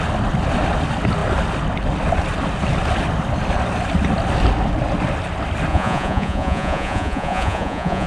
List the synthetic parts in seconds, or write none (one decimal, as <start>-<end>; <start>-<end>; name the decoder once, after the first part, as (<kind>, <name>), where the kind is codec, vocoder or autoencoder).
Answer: 5.7-8.1 (vocoder, Vocos)